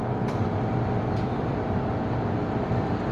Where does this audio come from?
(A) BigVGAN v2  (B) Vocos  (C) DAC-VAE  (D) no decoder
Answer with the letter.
A